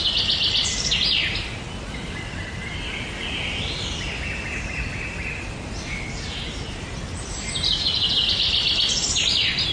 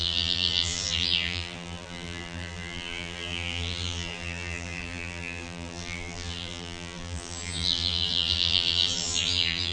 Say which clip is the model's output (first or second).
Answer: second